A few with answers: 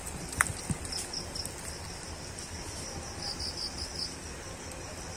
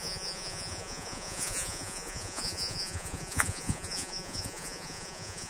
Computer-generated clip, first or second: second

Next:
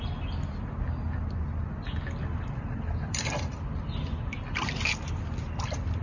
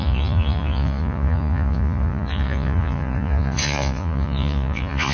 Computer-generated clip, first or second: second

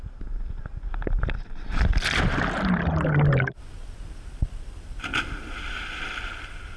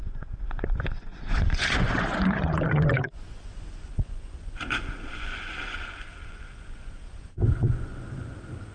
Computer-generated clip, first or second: second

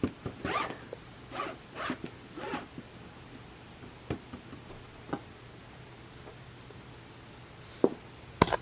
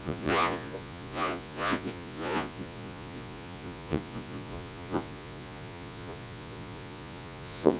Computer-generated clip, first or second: second